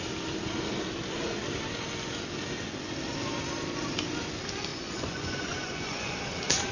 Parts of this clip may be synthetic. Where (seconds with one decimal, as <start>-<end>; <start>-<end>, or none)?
4.7-6.2